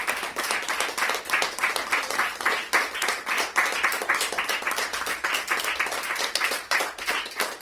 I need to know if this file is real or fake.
real